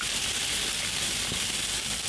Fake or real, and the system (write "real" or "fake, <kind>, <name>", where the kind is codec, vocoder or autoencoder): real